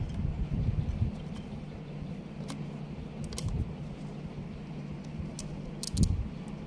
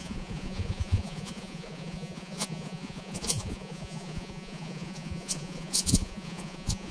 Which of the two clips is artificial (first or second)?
second